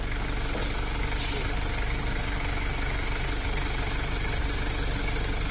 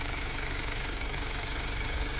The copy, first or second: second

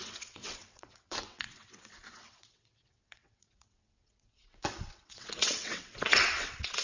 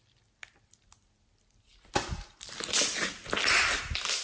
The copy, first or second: first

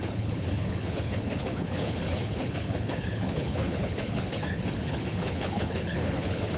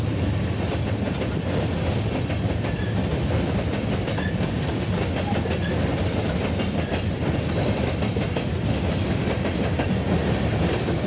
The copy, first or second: first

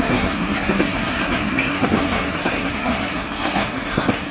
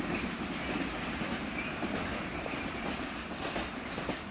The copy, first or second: first